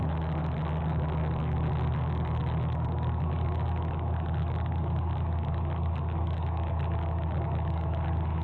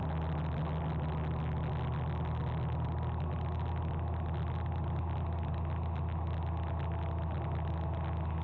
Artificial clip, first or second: first